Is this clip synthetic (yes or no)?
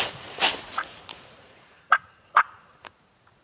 yes